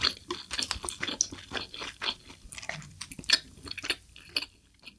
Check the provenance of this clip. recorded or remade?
recorded